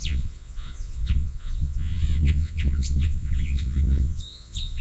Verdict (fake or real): fake